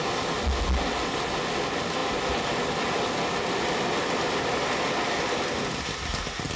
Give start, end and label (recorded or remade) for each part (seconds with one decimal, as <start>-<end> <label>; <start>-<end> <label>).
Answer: 0.0-6.6 recorded